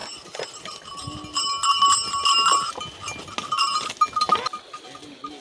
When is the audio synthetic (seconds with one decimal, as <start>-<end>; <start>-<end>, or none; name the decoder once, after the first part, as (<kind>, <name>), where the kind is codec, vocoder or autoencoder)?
none